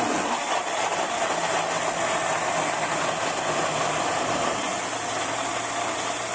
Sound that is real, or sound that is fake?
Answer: real